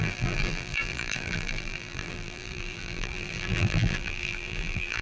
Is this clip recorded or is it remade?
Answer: remade